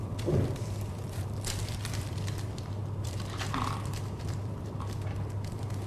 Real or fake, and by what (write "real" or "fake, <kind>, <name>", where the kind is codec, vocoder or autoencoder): fake, vocoder, BigVGAN v2